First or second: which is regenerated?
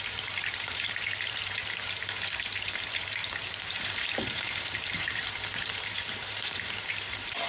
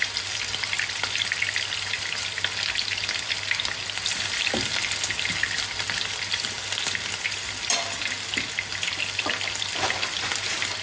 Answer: first